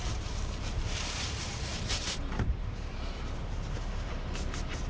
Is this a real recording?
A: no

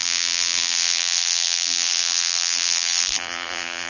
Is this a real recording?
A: no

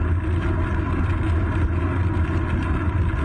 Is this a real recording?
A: yes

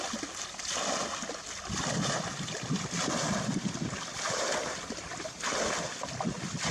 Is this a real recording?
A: yes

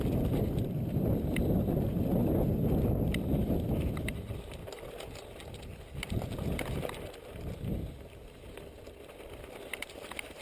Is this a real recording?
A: yes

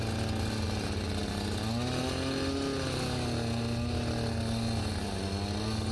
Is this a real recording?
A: yes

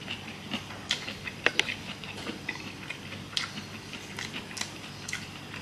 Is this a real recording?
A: yes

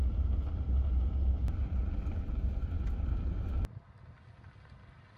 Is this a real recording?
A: yes